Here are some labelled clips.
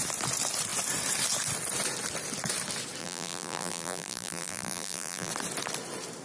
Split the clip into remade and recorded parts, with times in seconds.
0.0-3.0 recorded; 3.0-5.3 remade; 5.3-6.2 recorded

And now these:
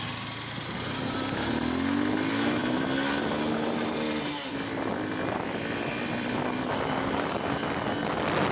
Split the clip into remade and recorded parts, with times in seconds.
0.0-2.6 recorded; 2.6-7.5 remade; 7.5-8.5 recorded

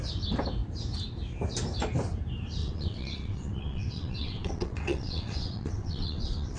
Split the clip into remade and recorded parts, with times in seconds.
0.0-2.6 recorded; 2.6-6.6 remade

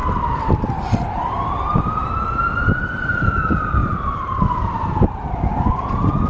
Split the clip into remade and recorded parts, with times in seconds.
0.0-3.8 recorded; 3.8-4.4 remade; 4.4-6.3 recorded

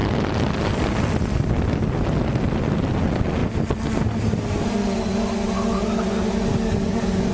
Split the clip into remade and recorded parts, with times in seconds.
0.0-6.5 recorded; 6.5-7.3 remade